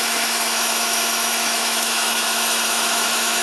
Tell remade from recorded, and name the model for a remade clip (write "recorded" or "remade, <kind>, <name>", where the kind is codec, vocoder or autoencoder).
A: remade, autoencoder, DAC-VAE